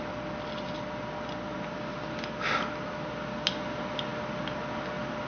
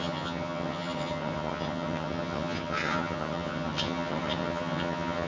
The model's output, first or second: second